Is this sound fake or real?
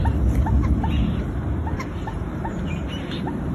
real